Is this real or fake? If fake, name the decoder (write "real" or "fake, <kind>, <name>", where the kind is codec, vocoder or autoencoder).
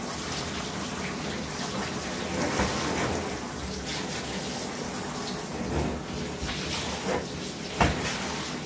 real